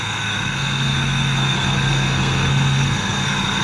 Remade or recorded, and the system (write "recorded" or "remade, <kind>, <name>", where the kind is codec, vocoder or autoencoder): remade, codec, SNAC